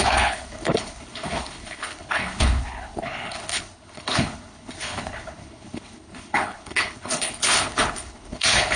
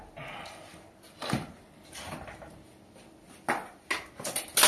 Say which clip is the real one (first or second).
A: second